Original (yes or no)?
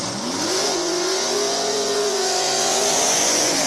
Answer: no